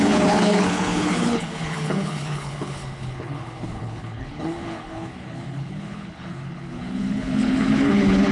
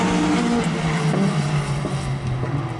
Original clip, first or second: second